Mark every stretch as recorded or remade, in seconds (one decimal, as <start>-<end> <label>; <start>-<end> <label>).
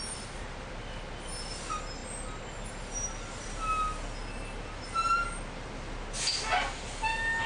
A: 0.0-7.5 recorded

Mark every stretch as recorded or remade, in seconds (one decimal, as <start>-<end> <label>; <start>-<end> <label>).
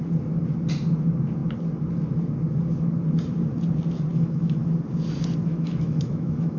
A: 0.0-4.1 recorded; 4.1-4.7 remade; 4.7-5.5 recorded; 5.5-6.6 remade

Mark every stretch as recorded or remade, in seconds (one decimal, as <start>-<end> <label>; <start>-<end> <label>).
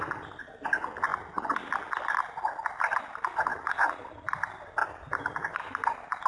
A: 0.0-1.1 remade; 1.1-3.0 recorded; 3.0-6.3 remade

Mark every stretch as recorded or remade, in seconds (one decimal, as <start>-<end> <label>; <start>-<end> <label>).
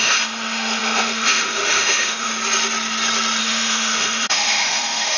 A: 0.0-2.3 remade; 2.3-3.4 recorded; 3.4-5.2 remade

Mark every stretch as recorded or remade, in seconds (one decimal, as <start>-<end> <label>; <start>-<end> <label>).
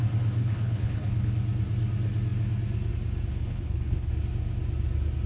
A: 0.0-0.4 recorded; 0.4-1.3 remade; 1.3-3.3 recorded; 3.3-4.1 remade; 4.1-5.3 recorded